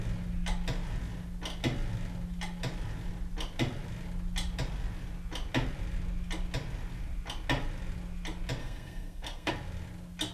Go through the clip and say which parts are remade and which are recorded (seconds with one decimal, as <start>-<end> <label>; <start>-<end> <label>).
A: 0.0-8.6 recorded; 8.6-9.5 remade; 9.5-10.3 recorded